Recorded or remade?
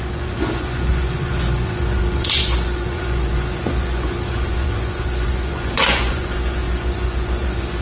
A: remade